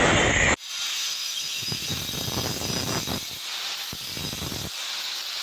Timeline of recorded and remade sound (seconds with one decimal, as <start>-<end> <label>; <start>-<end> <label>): 0.0-0.9 recorded; 0.9-2.0 remade; 2.0-5.4 recorded